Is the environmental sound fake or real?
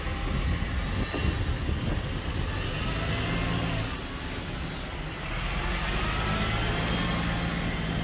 real